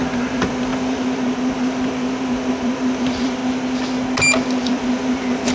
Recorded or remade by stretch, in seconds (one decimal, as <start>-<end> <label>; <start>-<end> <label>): 0.0-3.4 remade; 3.4-4.6 recorded; 4.6-5.5 remade